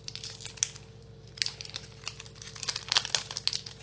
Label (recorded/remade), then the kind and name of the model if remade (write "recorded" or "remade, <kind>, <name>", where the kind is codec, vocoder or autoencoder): recorded